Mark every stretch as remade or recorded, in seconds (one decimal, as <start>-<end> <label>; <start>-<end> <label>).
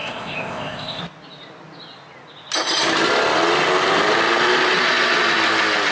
0.0-1.0 remade; 1.0-5.9 recorded